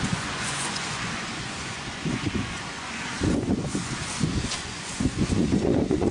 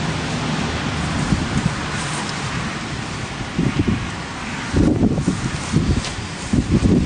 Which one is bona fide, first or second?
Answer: second